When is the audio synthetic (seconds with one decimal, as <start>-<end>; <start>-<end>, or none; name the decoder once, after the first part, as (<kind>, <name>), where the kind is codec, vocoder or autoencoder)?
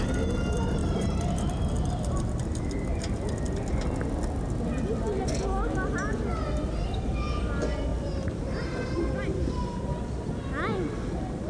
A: 0.8-1.5 (vocoder, BigVGAN v2); 7.9-9.5